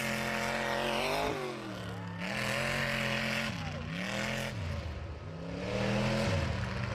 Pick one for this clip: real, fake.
real